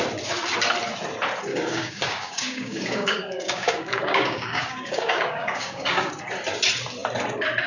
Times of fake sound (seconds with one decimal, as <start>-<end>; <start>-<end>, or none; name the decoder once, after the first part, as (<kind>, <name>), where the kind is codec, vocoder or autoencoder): 1.5-6.1 (codec, DAC)